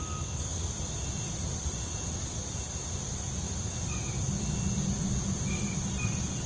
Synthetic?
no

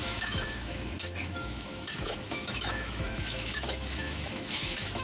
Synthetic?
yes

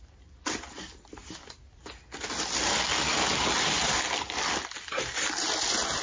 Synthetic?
no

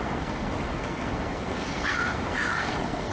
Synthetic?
yes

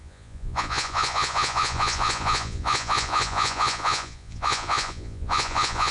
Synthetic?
yes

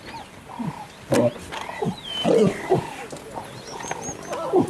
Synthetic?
no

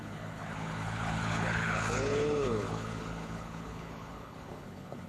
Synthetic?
yes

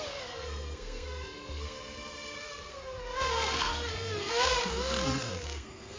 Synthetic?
yes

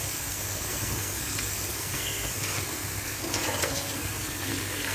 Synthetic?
yes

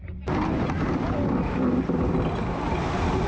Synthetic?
no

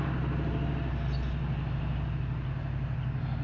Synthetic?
no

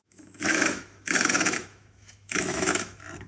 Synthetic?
yes